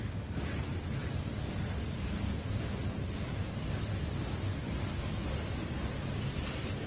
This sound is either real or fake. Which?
real